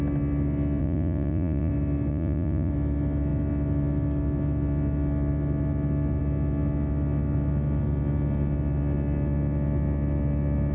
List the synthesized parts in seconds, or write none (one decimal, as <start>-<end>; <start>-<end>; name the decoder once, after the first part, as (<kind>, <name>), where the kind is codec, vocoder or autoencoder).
0.8-1.7 (vocoder, Vocos); 2.1-2.7